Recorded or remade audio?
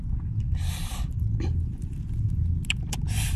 recorded